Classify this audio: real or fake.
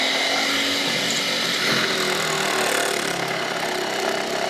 real